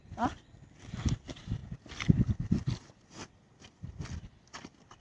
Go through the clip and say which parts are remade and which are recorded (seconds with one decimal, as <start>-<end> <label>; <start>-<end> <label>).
0.0-5.0 recorded